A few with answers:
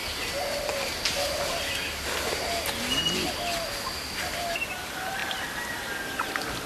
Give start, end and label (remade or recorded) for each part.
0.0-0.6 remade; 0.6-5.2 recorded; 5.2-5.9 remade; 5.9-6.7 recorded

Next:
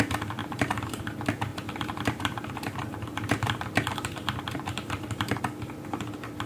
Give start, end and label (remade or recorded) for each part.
0.0-0.4 recorded; 0.4-1.0 remade; 1.0-1.5 recorded; 1.5-5.4 remade; 5.4-6.5 recorded

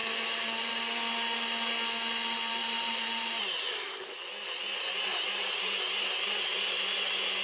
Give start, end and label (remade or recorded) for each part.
0.0-2.6 recorded; 2.6-3.3 remade; 3.3-5.1 recorded; 5.1-5.7 remade; 5.7-7.4 recorded

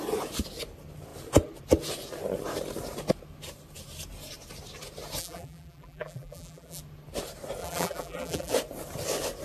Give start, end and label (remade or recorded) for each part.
0.0-5.2 recorded; 5.2-6.8 remade; 6.8-7.6 recorded; 7.6-8.5 remade; 8.5-9.4 recorded

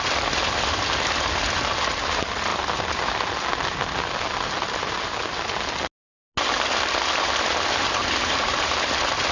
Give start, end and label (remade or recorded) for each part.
0.0-8.0 recorded; 8.0-8.9 remade; 8.9-9.3 recorded

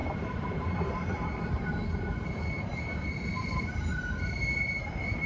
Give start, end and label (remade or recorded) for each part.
0.0-2.7 remade; 2.7-3.3 recorded; 3.3-5.3 remade

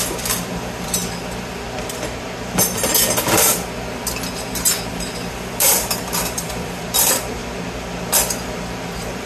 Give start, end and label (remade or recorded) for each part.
0.0-1.0 remade; 1.0-4.9 recorded; 4.9-7.4 remade; 7.4-8.0 recorded; 8.0-9.3 remade

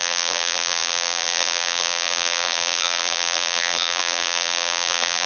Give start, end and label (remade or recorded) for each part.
0.0-5.3 remade